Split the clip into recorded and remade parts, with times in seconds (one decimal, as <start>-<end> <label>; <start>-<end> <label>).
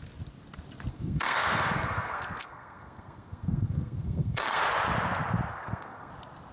0.0-0.9 recorded; 0.9-4.6 remade; 4.6-5.5 recorded; 5.5-6.1 remade; 6.1-6.5 recorded